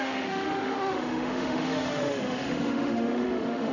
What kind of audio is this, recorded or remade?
remade